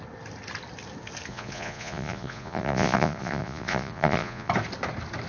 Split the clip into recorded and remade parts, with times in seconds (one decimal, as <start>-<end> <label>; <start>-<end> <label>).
0.0-1.3 recorded; 1.3-4.5 remade; 4.5-5.3 recorded